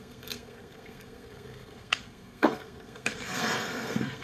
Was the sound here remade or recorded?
remade